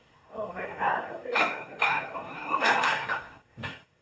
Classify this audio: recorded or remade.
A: remade